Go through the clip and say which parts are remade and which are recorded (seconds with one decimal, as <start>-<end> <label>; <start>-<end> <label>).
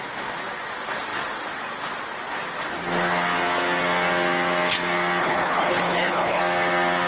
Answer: 0.0-5.2 recorded; 5.2-6.4 remade; 6.4-7.1 recorded